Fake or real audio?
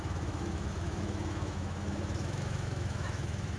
fake